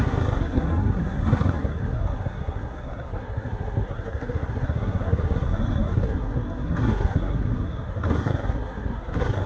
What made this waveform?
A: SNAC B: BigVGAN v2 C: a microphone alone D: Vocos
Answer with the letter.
A